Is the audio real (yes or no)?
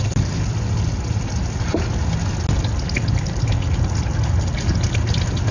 yes